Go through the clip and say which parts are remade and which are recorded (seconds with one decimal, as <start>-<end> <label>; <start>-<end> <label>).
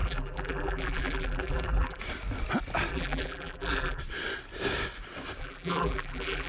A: 0.0-2.0 remade; 2.0-2.9 recorded; 2.9-4.0 remade; 4.0-5.4 recorded; 5.4-6.5 remade